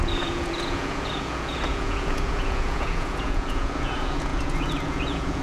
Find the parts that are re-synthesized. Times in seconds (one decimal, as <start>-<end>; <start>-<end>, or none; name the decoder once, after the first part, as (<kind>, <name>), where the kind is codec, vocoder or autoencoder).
0.0-5.4 (vocoder, Vocos)